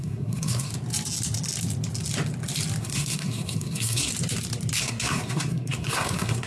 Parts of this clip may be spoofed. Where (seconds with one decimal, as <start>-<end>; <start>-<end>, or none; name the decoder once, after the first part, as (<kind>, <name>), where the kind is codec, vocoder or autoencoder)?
0.0-0.7 (codec, SNAC); 2.8-4.1; 4.8-6.5